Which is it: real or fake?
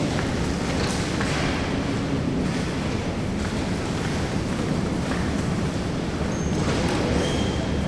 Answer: real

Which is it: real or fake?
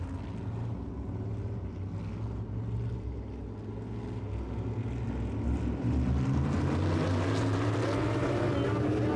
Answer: real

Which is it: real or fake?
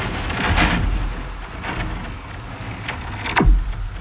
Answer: real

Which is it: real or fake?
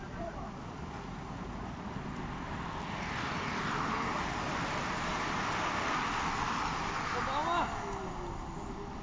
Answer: real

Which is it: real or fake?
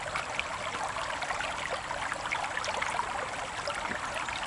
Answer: real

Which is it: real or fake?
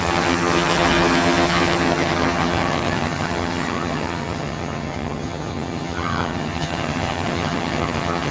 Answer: fake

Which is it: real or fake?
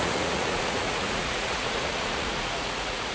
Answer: fake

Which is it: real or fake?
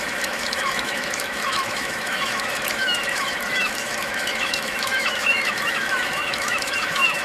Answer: fake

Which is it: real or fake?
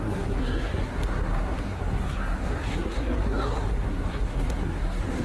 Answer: fake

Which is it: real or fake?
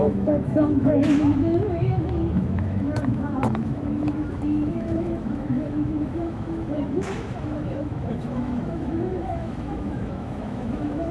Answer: fake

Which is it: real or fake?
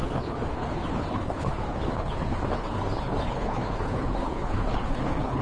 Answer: fake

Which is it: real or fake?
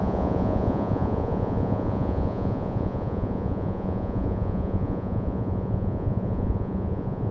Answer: fake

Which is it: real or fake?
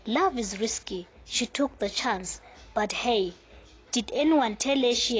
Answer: real